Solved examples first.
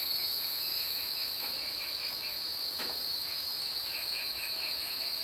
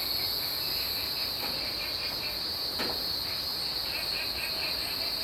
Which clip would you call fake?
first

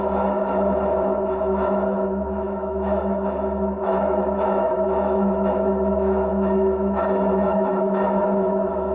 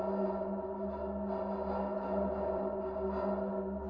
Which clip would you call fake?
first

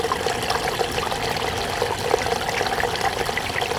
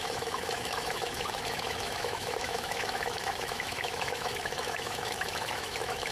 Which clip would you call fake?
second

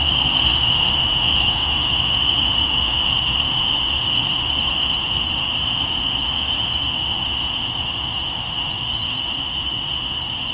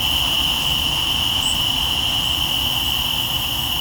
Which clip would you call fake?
first